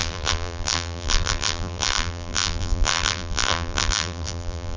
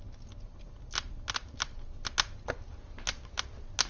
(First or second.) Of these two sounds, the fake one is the first